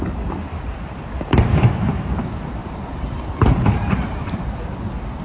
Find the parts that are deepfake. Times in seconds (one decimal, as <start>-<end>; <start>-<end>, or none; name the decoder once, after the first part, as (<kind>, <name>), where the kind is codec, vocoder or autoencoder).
0.5-2.2 (vocoder, BigVGAN v2); 2.6-4.7